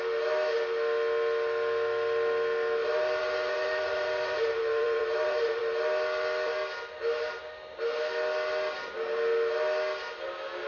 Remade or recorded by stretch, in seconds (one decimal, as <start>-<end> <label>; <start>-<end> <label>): 0.0-2.8 recorded; 2.8-5.6 remade; 5.6-10.7 recorded